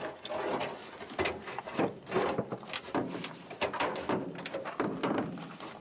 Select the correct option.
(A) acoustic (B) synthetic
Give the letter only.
A